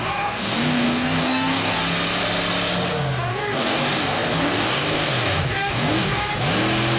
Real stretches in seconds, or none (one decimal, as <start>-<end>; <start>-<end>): 1.8-3.3; 6.3-7.0